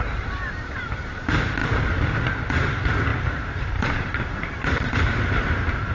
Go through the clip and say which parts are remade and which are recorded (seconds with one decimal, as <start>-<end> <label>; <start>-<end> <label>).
0.0-5.9 remade